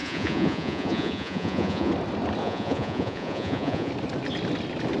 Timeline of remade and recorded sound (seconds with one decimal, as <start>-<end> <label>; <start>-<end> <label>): 0.0-1.9 remade; 1.9-2.4 recorded; 2.4-3.9 remade; 3.9-5.0 recorded